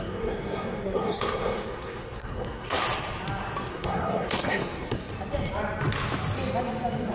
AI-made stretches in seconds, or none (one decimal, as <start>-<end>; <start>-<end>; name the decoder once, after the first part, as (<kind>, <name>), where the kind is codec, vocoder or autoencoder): 0.0-2.8 (codec, SNAC); 3.7-5.1